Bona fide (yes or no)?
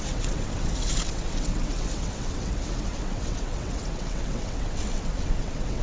no